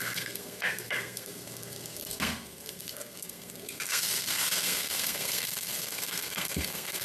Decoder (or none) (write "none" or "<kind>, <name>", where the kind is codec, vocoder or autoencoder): codec, SNAC